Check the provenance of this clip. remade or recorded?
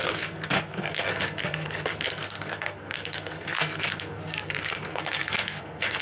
remade